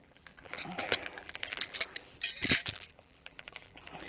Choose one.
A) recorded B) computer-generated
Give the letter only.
B